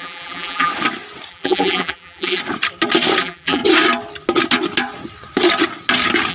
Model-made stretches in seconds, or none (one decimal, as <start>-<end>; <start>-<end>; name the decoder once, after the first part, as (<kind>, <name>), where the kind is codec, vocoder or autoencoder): 0.0-0.7 (vocoder, BigVGAN v2); 1.3-2.4; 3.2-3.6